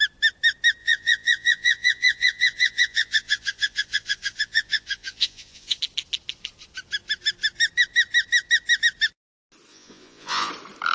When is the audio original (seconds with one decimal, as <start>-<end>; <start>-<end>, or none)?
0.0-0.8; 5.8-9.7; 10.5-10.9